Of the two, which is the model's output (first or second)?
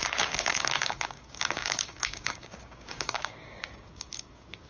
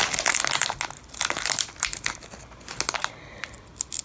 first